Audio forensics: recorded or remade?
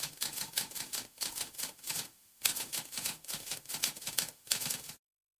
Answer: remade